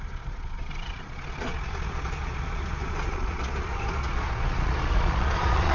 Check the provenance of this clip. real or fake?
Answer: fake